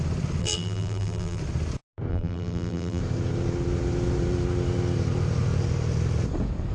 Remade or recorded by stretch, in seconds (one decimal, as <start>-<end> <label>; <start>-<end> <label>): 0.0-0.4 recorded; 0.4-1.4 remade; 1.4-2.1 recorded; 2.1-3.0 remade; 3.0-6.7 recorded